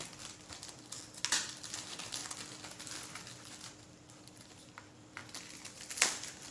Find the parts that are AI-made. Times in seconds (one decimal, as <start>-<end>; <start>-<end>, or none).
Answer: none